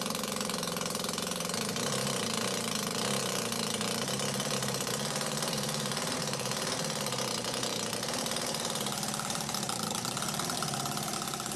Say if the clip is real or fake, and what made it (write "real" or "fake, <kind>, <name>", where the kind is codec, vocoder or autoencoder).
fake, vocoder, BigVGAN v2